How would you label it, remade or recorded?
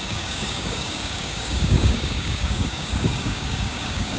remade